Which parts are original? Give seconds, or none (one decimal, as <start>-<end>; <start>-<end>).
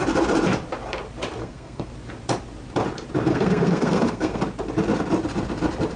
0.0-1.4; 1.9-3.3; 4.4-6.0